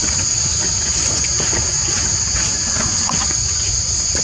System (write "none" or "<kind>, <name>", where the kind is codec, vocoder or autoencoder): vocoder, Vocos